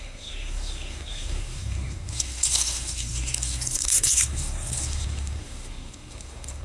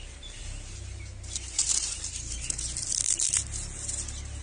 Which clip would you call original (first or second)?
second